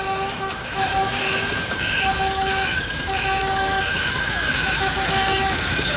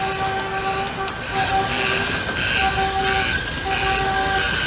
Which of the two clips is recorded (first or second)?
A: second